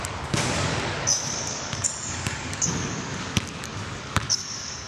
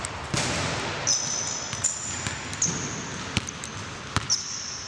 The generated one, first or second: first